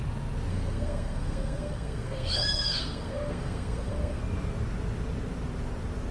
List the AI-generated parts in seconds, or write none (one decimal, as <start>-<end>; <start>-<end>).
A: 0.5-4.2